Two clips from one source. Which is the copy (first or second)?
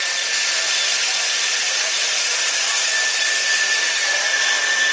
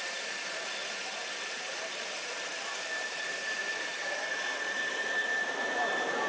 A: second